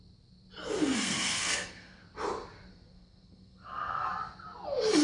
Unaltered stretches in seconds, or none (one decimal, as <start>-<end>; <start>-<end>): 0.0-0.8; 2.0-2.7; 4.1-5.0